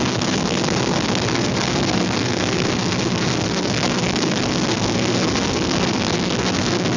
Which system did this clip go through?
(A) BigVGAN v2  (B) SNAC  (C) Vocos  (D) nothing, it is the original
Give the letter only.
B